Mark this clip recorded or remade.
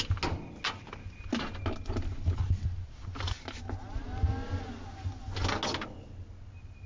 recorded